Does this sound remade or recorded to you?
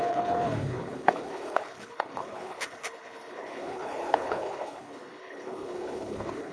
remade